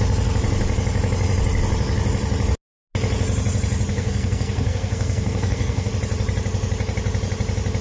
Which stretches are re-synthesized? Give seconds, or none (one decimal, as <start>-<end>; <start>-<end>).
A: 3.9-5.9